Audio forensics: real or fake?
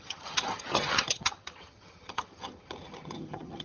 fake